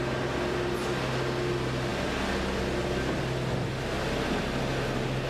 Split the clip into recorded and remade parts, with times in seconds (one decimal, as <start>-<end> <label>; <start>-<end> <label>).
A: 0.0-5.3 recorded

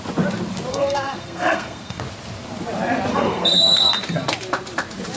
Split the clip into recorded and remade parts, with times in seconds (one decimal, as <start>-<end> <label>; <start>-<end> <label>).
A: 0.0-0.7 recorded; 0.7-2.0 remade; 2.0-3.1 recorded; 3.1-3.9 remade; 3.9-5.2 recorded